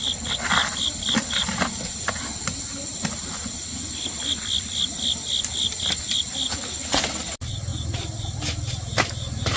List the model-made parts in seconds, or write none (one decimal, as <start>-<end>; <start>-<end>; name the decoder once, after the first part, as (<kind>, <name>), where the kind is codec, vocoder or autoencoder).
none